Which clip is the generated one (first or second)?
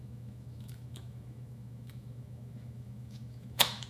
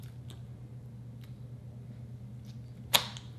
first